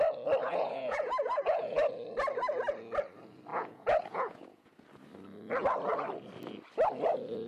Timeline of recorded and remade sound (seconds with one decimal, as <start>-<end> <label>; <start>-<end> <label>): 0.0-0.4 recorded; 0.4-1.9 remade; 1.9-3.5 recorded; 3.5-4.7 remade; 4.7-7.5 recorded